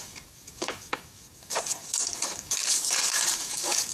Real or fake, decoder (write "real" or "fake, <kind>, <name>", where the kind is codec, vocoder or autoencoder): fake, codec, DAC